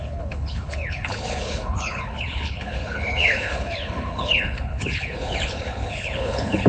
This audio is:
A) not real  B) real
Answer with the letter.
A